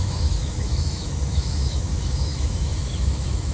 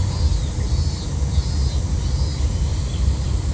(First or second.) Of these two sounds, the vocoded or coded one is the first